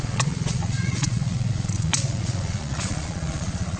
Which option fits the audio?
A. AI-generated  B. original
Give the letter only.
A